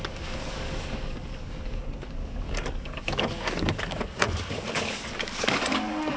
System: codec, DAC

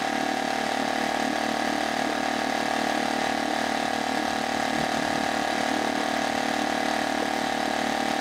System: none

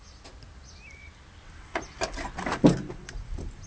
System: none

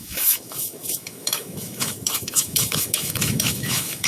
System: autoencoder, DAC-VAE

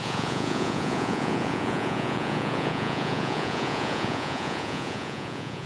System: vocoder, Vocos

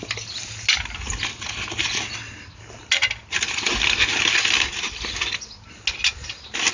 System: none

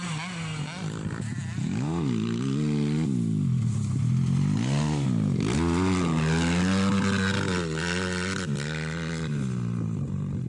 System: none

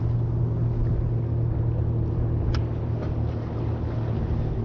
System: none